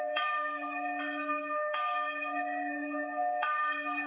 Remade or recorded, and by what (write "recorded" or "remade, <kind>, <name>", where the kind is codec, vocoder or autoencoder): remade, codec, SNAC